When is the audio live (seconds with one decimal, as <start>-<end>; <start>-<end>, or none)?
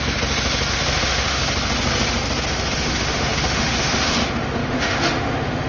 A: 0.0-0.7; 1.4-2.5